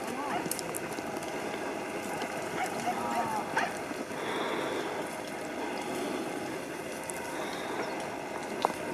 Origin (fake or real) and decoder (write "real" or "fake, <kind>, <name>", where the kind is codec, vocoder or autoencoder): real